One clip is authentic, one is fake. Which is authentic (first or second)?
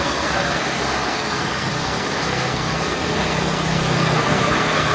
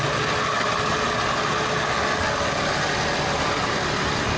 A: second